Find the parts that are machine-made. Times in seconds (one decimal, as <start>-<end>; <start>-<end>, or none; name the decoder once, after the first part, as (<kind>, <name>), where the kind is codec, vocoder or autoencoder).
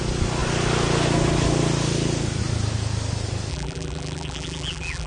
3.5-5.1 (vocoder, BigVGAN v2)